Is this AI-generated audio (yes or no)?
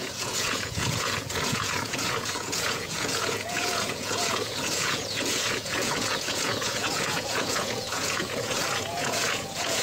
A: yes